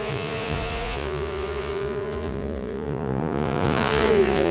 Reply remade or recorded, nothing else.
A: remade